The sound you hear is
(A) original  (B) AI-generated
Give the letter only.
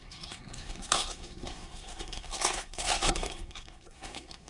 B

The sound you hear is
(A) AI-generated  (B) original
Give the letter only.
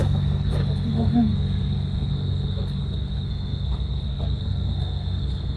A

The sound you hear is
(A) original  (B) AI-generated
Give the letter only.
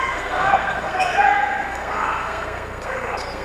B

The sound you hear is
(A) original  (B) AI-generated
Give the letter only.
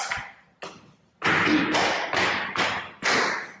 A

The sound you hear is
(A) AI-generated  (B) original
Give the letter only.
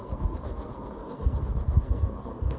A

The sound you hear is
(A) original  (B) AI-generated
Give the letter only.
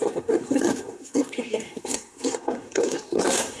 B